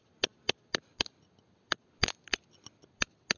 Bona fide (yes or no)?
yes